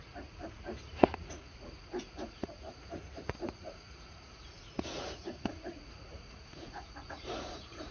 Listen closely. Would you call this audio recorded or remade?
remade